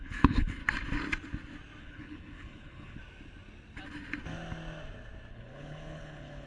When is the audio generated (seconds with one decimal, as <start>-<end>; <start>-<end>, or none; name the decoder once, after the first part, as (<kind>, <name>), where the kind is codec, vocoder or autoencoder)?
0.0-0.6 (codec, HILCodec); 1.8-3.0; 5.3-6.5